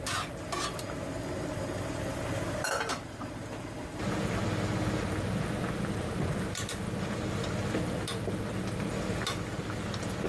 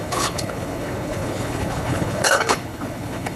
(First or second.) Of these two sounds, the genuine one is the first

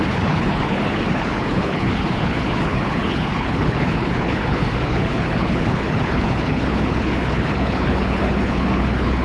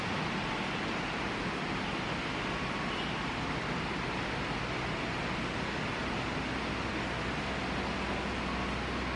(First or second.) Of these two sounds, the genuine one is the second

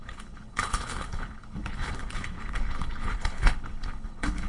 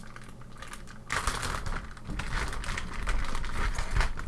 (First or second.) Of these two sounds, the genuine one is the second